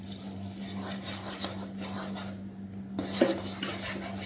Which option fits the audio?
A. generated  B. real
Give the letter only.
B